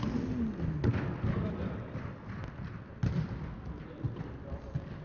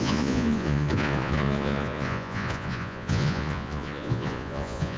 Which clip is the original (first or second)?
first